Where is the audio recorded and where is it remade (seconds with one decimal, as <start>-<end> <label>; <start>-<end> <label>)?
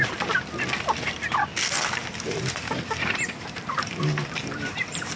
0.0-2.0 recorded; 2.0-5.2 remade